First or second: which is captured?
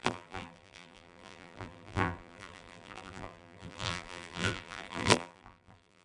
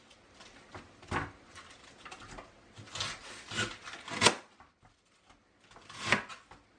second